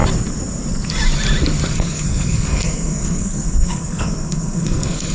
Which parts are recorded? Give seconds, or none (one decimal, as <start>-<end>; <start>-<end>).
0.0-1.7